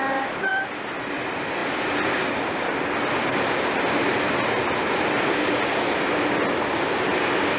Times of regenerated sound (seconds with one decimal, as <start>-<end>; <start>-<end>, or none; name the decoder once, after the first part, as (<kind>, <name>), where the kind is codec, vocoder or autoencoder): none